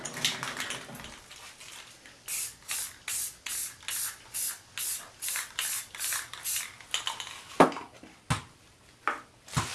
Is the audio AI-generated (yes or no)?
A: no